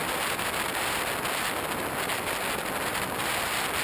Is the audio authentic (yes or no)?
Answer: yes